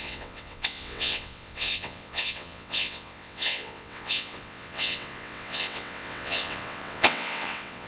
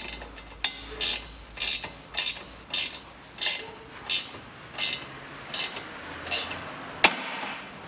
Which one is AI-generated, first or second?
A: first